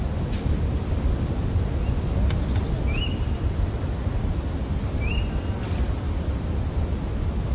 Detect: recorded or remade recorded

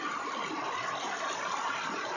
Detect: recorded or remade recorded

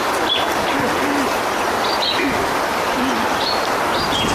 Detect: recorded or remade recorded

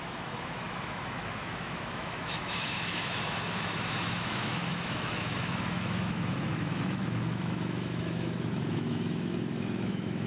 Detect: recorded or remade remade